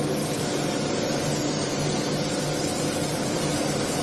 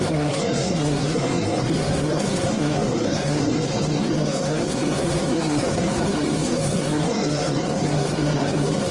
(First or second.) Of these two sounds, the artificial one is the second